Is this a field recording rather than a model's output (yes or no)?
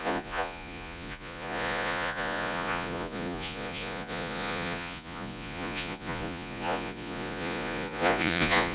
no